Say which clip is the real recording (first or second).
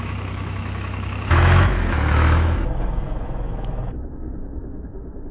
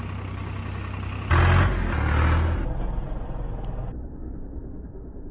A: second